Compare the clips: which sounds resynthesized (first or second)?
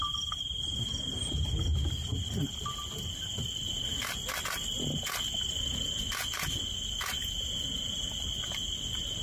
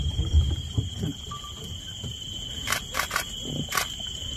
second